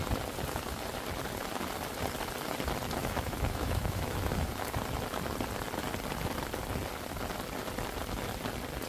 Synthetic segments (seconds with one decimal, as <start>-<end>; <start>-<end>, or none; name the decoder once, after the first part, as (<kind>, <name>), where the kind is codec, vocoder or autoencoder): 3.0-4.5 (autoencoder, DAC-VAE)